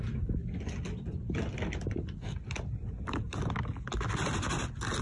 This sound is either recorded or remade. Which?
recorded